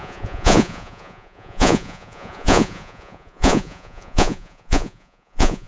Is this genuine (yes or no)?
no